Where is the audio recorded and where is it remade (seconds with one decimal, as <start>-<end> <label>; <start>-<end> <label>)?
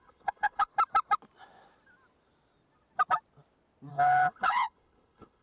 0.0-0.7 remade; 0.7-3.9 recorded; 3.9-5.4 remade